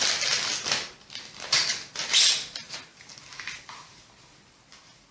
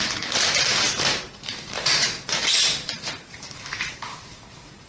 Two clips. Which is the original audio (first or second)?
first